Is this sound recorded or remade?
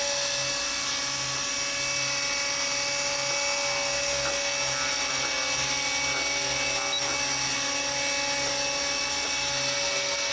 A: recorded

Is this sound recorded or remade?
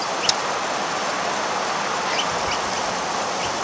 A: recorded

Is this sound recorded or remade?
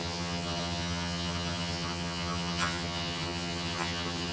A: remade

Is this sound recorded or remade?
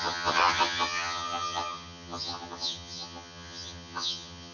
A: remade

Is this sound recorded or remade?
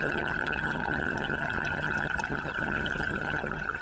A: remade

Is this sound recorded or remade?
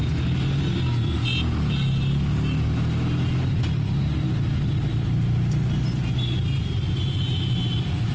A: recorded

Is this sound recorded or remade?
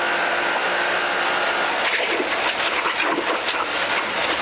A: recorded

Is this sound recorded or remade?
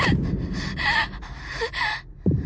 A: recorded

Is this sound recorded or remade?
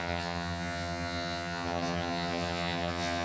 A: remade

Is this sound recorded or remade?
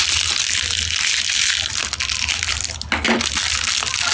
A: recorded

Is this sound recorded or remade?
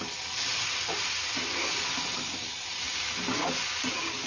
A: recorded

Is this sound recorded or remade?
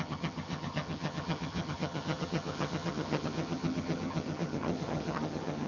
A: remade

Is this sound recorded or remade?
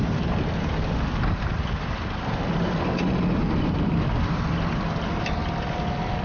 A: recorded